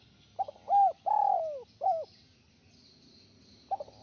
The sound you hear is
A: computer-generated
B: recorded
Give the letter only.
B